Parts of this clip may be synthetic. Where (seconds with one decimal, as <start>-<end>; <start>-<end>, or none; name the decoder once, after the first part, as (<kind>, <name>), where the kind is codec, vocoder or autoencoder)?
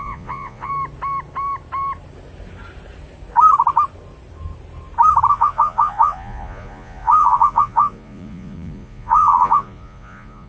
0.0-0.7 (vocoder, Vocos); 5.3-10.5